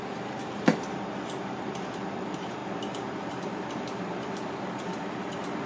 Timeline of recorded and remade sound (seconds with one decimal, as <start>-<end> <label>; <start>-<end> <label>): 0.0-5.7 remade